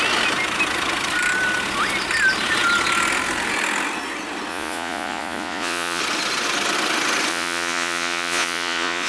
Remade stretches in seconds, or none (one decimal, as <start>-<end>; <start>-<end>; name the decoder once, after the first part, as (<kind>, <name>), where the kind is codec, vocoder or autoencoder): 4.5-6.0 (vocoder, Vocos); 7.3-9.1